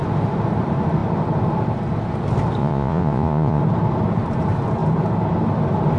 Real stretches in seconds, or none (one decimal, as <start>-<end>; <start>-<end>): 0.0-2.6; 3.6-6.0